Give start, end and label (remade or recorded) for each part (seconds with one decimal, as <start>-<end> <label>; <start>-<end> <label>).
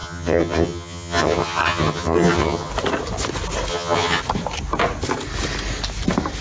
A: 0.0-2.7 remade; 2.7-3.7 recorded; 3.7-4.2 remade; 4.2-6.4 recorded